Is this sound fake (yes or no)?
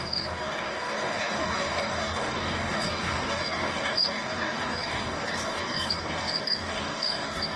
yes